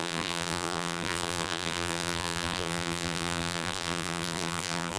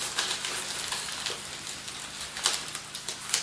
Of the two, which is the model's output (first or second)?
first